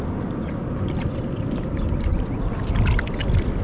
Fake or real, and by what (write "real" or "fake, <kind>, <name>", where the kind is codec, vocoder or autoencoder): real